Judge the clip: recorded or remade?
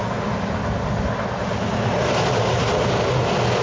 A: recorded